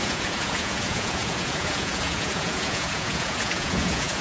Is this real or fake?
fake